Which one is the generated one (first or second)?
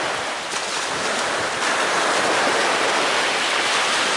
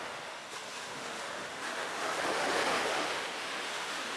second